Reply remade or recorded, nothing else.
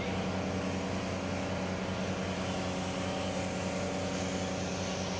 recorded